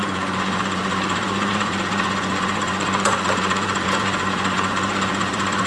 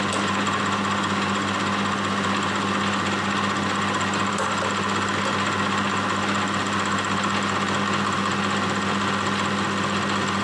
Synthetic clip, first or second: first